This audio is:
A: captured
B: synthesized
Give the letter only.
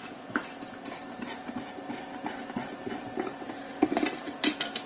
A